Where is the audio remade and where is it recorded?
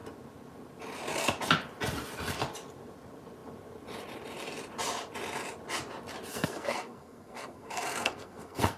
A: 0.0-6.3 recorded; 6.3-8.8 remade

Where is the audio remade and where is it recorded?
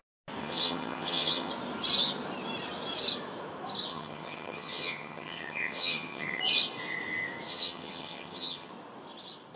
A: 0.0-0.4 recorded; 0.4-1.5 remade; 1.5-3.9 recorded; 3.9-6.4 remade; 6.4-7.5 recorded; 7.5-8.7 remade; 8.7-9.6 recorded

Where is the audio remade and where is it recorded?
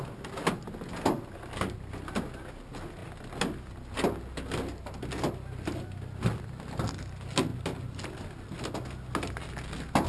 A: 0.0-10.1 recorded